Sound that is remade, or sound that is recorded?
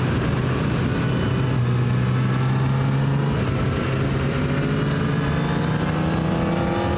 recorded